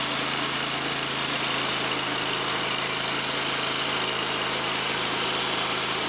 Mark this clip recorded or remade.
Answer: recorded